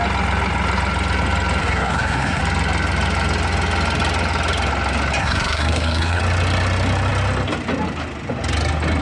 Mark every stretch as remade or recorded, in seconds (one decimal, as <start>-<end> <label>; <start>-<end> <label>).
0.0-1.6 recorded; 1.6-2.4 remade; 2.4-5.2 recorded; 5.2-6.2 remade; 6.2-9.0 recorded